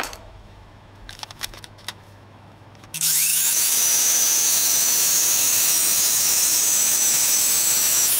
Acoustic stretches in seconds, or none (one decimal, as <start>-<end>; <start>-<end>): none